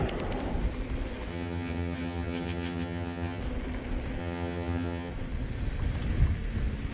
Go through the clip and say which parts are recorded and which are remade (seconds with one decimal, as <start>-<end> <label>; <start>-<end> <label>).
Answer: 0.0-1.3 recorded; 1.3-3.4 remade; 3.4-4.2 recorded; 4.2-5.1 remade; 5.1-6.9 recorded